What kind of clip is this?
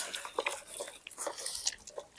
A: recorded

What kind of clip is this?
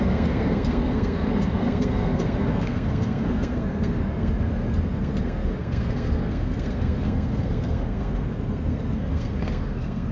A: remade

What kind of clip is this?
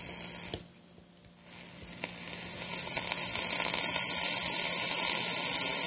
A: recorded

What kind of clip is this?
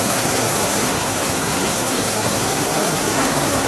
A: remade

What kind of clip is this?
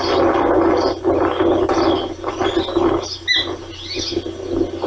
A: recorded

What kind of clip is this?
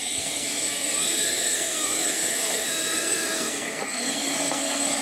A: remade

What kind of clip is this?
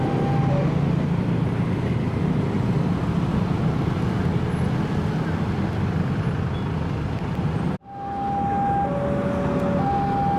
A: recorded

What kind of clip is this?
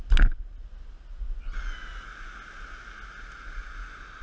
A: recorded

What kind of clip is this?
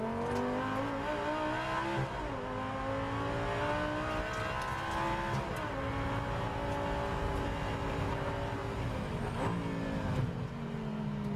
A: recorded